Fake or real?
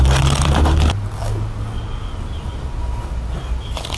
real